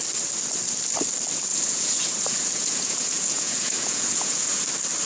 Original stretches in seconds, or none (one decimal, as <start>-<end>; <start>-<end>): 0.0-1.5; 4.6-5.1